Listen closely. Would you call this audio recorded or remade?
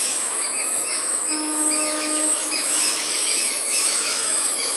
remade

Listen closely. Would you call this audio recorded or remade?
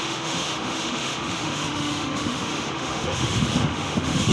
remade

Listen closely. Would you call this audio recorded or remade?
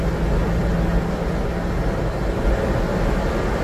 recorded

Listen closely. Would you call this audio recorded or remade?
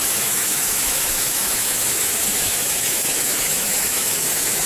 remade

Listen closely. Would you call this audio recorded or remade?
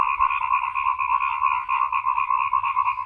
recorded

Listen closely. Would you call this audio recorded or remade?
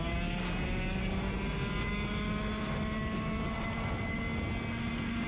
recorded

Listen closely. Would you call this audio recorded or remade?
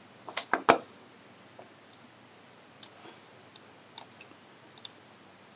recorded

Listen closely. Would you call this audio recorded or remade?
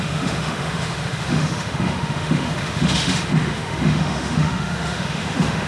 remade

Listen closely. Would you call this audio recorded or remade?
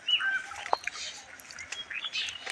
recorded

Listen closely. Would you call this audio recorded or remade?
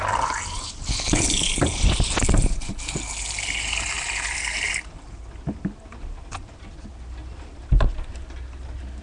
recorded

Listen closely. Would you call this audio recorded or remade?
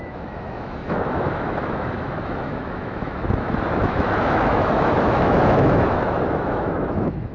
remade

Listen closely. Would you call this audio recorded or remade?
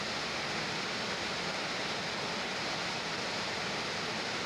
recorded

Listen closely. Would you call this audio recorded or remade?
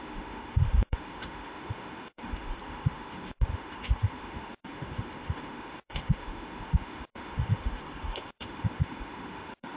remade